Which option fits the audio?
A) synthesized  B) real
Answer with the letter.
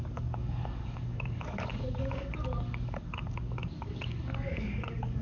A